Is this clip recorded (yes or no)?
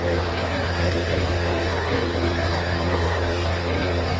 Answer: no